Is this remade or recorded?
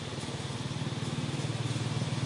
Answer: recorded